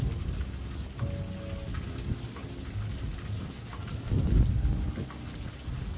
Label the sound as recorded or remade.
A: recorded